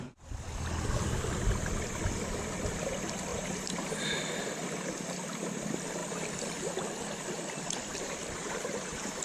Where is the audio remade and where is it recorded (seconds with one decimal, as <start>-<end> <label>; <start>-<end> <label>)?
0.0-3.3 recorded; 3.3-3.8 remade; 3.8-8.2 recorded; 8.2-9.2 remade